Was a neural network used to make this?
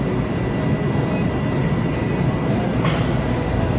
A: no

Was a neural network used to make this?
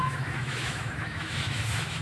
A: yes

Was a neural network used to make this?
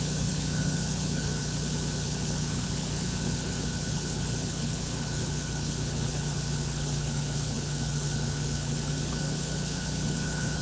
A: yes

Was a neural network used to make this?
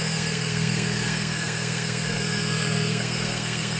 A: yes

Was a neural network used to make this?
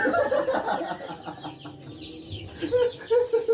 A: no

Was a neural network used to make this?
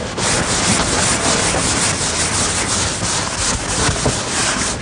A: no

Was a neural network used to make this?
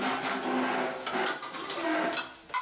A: no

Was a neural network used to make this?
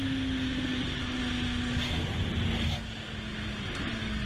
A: no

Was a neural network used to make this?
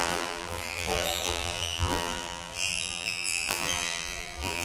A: yes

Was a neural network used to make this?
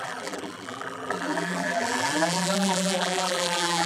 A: yes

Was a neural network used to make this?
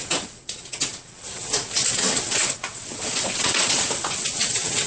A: yes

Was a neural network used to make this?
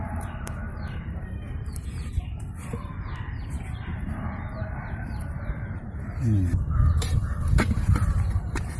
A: yes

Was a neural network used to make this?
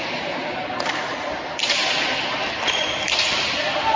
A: no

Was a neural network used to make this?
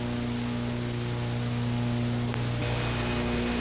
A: no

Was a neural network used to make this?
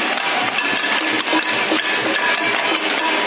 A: no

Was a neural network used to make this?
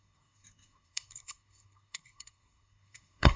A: yes